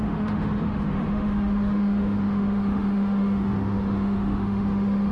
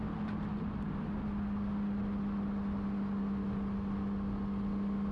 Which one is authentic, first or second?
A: second